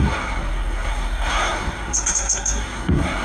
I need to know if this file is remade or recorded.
remade